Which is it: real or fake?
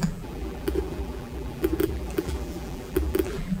fake